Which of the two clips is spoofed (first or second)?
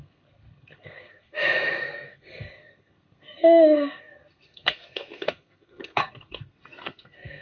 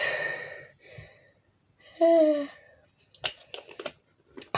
first